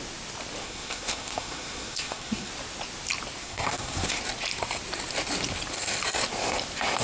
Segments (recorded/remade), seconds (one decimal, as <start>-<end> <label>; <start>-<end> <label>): 0.0-0.6 recorded; 0.6-2.5 remade; 2.5-3.4 recorded; 3.4-4.2 remade; 4.2-7.0 recorded